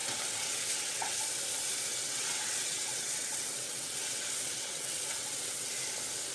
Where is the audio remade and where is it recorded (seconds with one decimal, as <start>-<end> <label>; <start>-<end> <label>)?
0.0-1.2 remade; 1.2-1.9 recorded; 1.9-5.7 remade; 5.7-6.3 recorded